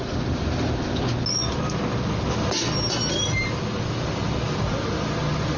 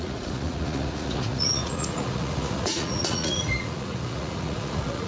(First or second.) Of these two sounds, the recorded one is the first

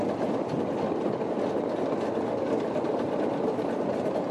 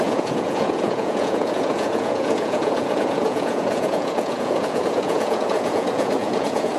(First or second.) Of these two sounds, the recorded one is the first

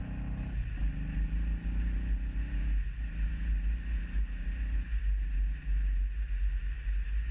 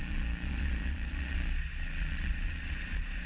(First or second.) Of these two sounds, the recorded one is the first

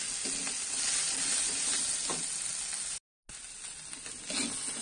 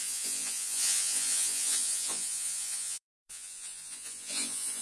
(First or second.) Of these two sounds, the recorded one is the first